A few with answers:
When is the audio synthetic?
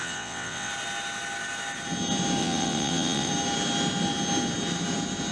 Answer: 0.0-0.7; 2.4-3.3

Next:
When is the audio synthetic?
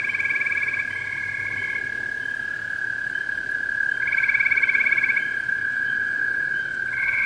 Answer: 5.6-7.3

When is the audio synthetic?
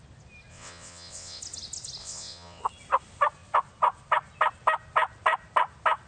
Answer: 0.5-1.4; 2.0-2.6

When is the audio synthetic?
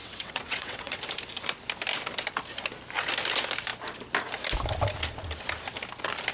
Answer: 0.0-1.0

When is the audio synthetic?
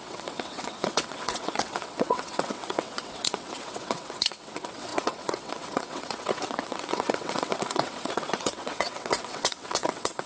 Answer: 0.0-10.3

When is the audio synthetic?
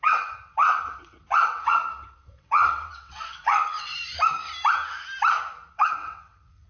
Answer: 0.0-3.9; 5.7-6.7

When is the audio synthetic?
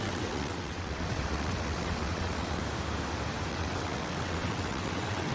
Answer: 0.0-2.6; 3.5-5.3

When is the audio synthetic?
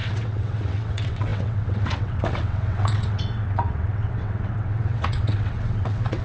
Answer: 0.0-6.2